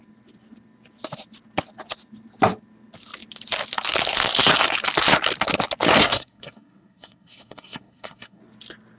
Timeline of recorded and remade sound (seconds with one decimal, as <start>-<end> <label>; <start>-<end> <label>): 0.0-6.0 recorded; 6.0-8.4 remade; 8.4-9.0 recorded